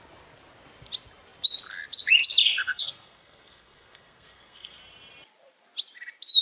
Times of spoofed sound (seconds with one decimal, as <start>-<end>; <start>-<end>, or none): 2.4-4.8

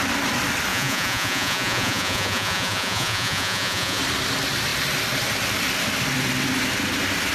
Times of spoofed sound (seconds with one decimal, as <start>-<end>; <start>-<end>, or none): 0.7-4.0

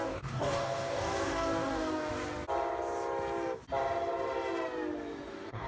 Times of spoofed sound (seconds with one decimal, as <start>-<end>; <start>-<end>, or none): 0.0-2.1; 5.3-5.7